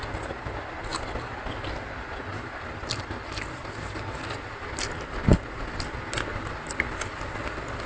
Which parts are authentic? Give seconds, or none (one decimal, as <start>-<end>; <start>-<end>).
0.0-7.9